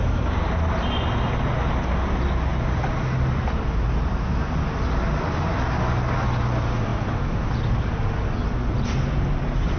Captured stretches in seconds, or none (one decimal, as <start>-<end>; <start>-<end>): 0.0-9.8